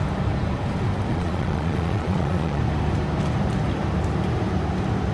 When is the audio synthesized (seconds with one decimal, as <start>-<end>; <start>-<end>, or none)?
1.1-2.6